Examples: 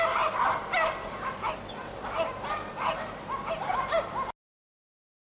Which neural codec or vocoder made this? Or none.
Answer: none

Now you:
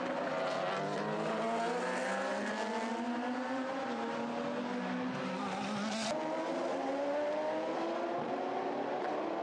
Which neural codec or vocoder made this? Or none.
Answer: none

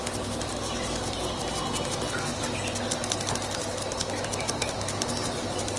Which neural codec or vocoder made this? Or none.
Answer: none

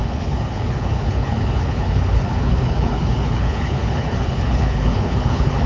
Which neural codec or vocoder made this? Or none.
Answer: codec, HILCodec